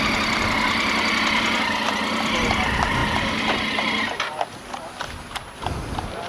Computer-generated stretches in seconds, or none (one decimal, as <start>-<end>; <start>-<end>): none